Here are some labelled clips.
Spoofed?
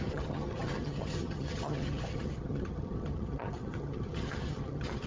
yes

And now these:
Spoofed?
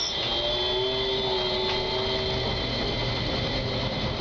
no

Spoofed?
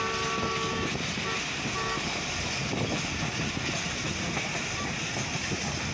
no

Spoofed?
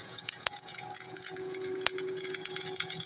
yes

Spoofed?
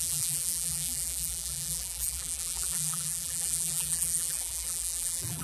yes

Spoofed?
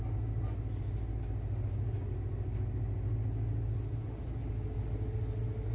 no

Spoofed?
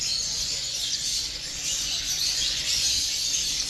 yes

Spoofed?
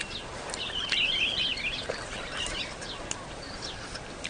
no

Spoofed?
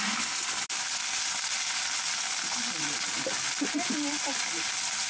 no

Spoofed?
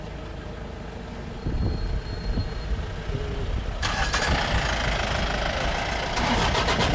no